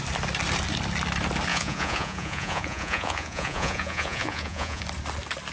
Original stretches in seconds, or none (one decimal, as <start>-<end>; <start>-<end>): 0.0-1.5; 4.8-5.5